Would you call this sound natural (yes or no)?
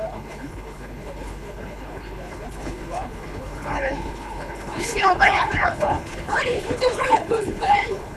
no